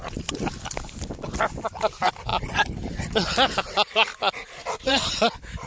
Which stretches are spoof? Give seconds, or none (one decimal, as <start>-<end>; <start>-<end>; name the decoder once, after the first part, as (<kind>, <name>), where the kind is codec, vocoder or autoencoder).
none